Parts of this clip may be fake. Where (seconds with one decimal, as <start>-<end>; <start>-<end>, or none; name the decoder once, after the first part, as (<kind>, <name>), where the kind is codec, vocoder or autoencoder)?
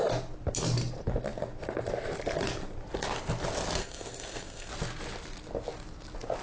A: 3.8-4.7 (codec, SNAC)